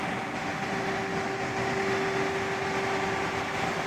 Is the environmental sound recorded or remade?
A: recorded